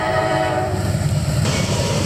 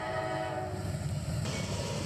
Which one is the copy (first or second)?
first